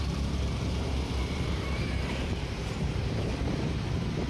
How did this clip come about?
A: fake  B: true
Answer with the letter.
A